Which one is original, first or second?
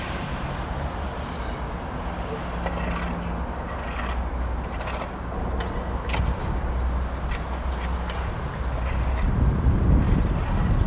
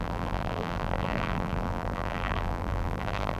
first